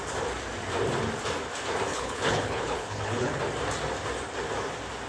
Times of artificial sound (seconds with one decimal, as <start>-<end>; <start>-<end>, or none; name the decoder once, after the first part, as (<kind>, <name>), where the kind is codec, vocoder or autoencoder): 1.9-3.4 (codec, HILCodec)